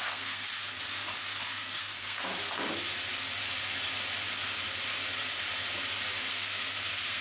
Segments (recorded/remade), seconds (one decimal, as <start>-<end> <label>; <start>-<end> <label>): 0.0-0.6 remade; 0.6-1.4 recorded; 1.4-2.3 remade; 2.3-6.3 recorded; 6.3-7.2 remade